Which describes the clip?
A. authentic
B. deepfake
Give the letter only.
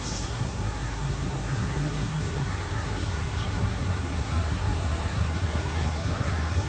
B